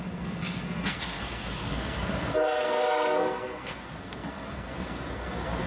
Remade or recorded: remade